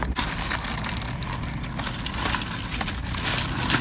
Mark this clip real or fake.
real